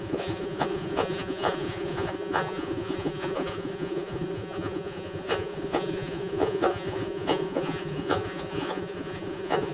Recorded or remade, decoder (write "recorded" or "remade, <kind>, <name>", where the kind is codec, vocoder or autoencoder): remade, vocoder, Vocos